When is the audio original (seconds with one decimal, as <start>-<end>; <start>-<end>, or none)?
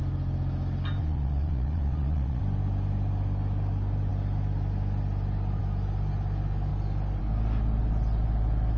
0.0-1.0; 2.4-8.8